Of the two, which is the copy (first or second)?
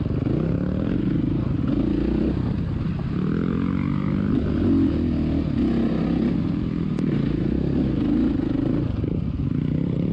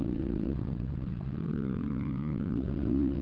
second